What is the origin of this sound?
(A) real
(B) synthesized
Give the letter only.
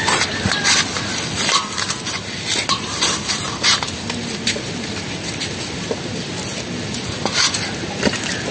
A